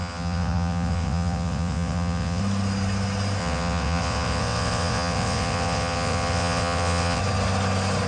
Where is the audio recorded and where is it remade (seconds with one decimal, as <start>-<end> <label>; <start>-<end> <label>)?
0.0-2.4 remade; 2.4-3.4 recorded; 3.4-7.2 remade; 7.2-8.1 recorded